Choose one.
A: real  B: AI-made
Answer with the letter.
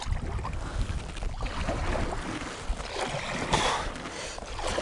A